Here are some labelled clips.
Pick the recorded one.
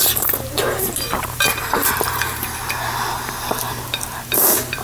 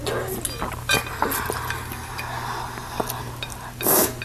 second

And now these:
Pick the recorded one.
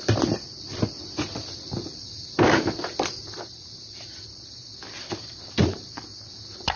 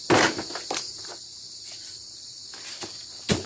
second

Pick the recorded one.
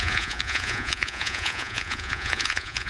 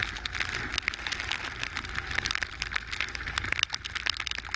second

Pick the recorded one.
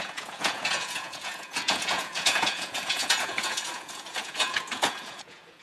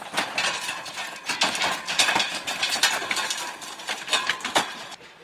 second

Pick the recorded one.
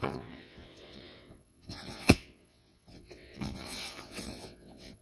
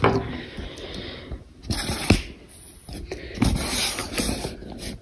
second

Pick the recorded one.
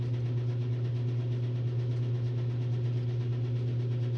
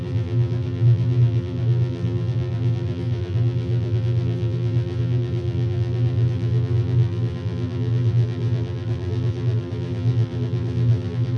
first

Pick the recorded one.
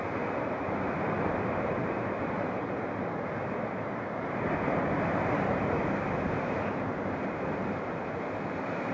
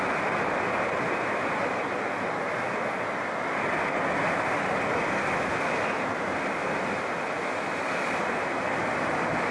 second